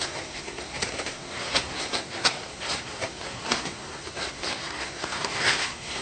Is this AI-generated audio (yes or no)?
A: yes